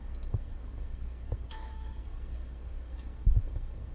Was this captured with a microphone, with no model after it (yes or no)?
no